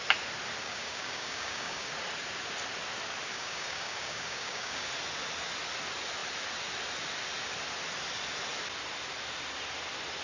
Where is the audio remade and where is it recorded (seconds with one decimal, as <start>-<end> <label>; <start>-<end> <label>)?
0.0-0.6 recorded; 0.6-1.9 remade; 1.9-3.3 recorded; 3.3-4.9 remade; 4.9-10.2 recorded